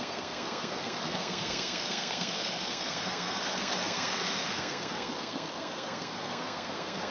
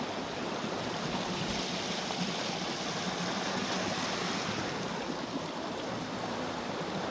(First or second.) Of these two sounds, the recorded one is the second